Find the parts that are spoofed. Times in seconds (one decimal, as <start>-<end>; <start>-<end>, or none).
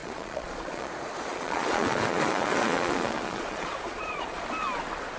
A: 0.0-0.9; 1.3-4.4